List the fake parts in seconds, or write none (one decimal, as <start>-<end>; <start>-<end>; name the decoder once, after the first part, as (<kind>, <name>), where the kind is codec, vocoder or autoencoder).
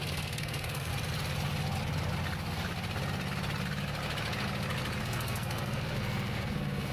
0.0-0.9 (codec, SNAC); 5.0-6.9